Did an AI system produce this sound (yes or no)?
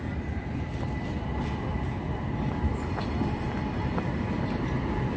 no